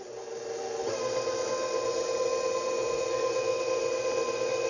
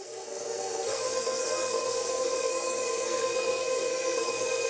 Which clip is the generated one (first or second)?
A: second